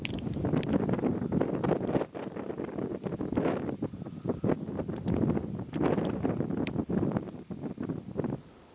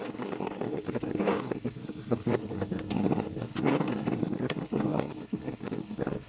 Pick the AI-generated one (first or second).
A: second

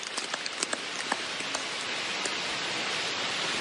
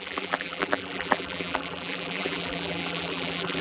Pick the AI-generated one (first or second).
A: second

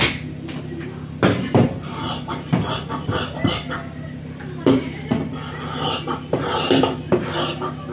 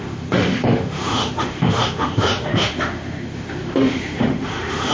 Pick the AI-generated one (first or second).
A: second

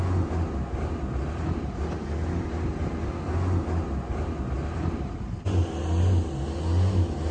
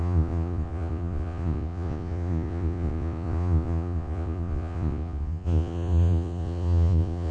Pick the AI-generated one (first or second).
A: second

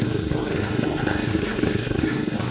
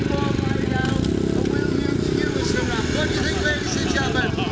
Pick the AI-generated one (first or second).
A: first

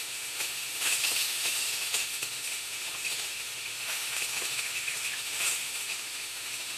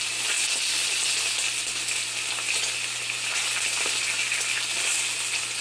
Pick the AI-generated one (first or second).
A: first